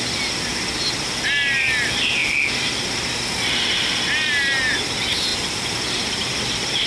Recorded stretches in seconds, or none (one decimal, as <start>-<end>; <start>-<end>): 0.0-6.9